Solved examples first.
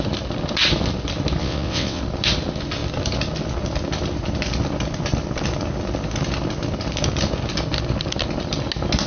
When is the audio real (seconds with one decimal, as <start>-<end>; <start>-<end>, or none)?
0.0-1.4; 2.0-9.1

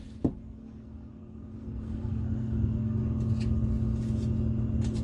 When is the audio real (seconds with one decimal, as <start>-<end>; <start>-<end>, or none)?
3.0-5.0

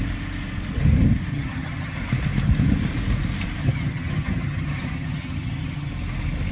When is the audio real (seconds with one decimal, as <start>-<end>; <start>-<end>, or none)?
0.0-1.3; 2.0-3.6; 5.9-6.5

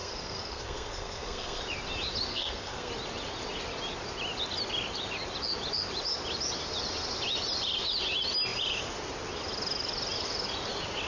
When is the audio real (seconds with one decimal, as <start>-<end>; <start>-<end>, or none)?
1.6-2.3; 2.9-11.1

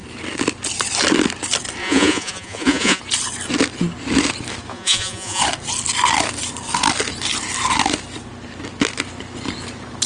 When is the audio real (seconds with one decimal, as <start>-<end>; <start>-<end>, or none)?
0.0-1.8; 3.0-4.7; 5.4-10.1